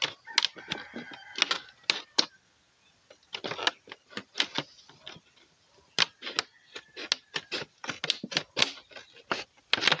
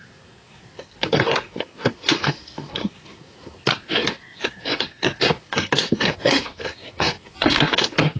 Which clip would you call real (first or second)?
first